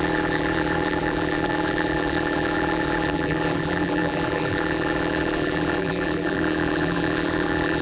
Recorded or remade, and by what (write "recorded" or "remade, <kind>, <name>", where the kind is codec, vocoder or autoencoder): remade, vocoder, BigVGAN v2